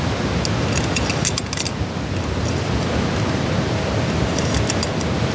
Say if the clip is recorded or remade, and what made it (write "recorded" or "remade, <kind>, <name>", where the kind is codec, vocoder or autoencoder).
recorded